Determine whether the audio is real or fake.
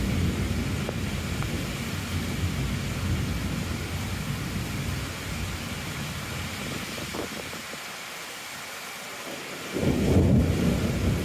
real